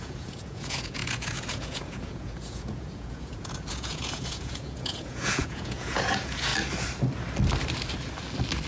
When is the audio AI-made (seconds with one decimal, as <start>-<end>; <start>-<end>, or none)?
0.0-6.5